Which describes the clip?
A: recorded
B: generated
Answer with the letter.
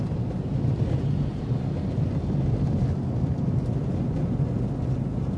A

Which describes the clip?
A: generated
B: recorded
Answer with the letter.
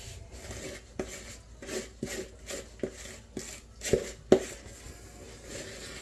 B